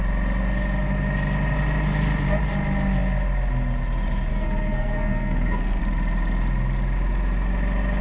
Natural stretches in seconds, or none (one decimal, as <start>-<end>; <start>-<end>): 0.0-4.3; 5.8-8.0